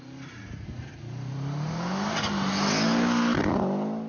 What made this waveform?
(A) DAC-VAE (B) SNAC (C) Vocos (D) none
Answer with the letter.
D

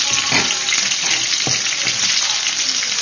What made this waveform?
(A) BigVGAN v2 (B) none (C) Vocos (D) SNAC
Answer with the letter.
B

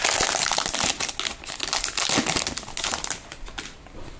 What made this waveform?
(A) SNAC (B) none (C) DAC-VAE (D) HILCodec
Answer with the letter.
B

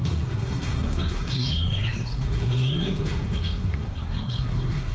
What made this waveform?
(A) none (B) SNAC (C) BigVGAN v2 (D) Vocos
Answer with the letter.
B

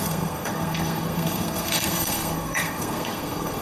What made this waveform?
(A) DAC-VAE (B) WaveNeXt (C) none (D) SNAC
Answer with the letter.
D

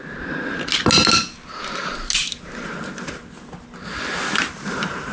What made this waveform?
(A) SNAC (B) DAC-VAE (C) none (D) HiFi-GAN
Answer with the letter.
C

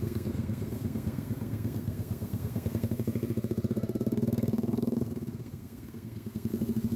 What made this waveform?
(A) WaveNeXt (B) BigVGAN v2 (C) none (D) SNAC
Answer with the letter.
D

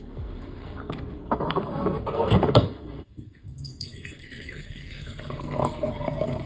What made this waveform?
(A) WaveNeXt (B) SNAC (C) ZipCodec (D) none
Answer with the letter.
B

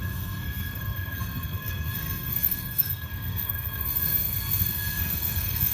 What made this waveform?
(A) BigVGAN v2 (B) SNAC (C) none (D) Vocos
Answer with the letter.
B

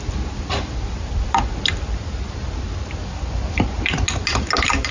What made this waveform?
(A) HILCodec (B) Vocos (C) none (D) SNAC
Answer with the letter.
C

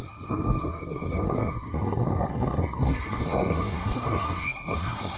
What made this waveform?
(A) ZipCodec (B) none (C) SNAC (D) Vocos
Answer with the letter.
C